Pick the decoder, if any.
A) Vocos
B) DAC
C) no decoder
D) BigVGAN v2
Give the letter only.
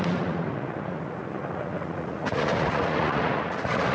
A